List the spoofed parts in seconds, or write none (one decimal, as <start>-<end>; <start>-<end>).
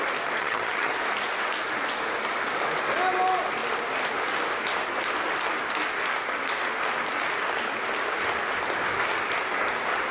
0.4-0.9